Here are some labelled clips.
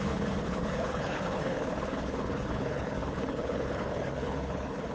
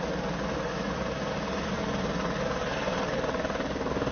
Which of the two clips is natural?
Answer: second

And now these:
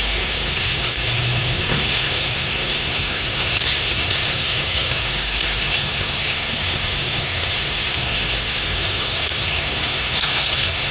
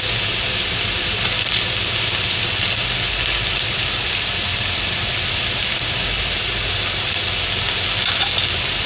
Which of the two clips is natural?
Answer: second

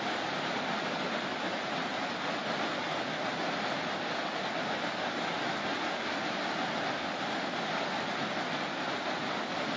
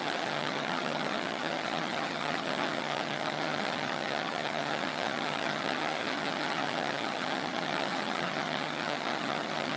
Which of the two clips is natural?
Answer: first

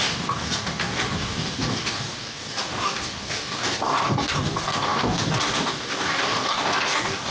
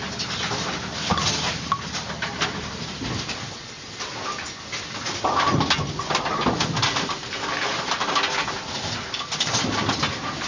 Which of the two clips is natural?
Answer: second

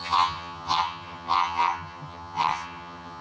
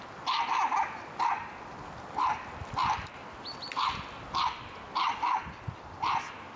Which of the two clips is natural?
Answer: second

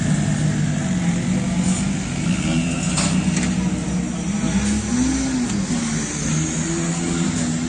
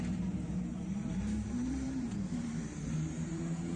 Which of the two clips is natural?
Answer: first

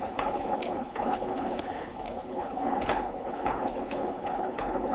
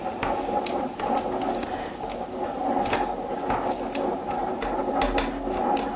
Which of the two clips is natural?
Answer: second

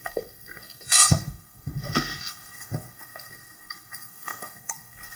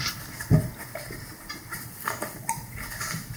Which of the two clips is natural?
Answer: second